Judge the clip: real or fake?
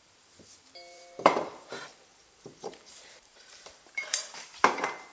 fake